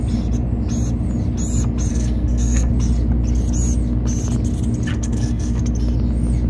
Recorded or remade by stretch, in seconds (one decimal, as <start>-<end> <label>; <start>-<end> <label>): 0.0-1.9 recorded; 1.9-2.7 remade; 2.7-4.9 recorded; 4.9-5.6 remade; 5.6-6.5 recorded